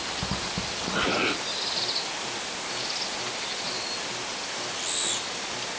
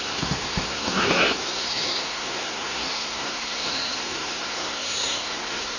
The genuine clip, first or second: first